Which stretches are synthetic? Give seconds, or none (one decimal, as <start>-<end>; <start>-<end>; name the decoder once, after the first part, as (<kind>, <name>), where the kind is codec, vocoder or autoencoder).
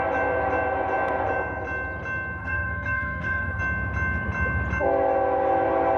2.4-3.6 (codec, SNAC)